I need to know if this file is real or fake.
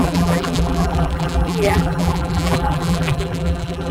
fake